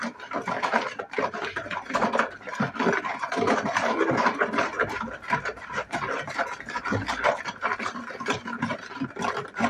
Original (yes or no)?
no